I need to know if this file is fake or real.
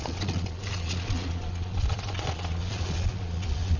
fake